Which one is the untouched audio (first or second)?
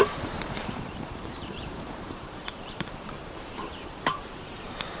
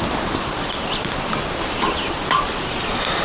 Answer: second